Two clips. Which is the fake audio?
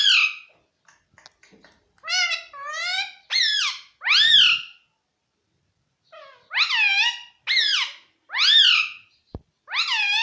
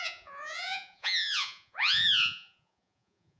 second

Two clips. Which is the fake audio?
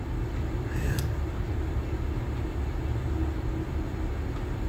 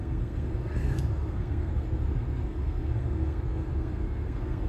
second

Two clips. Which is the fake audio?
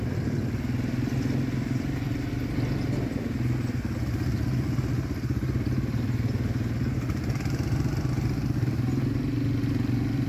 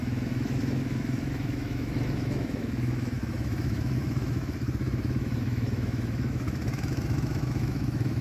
second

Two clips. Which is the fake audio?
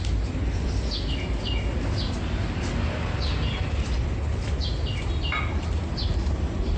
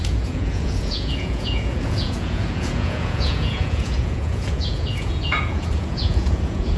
second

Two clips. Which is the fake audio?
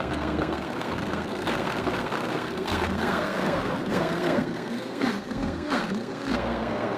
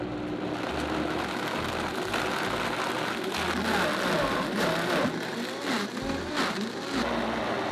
first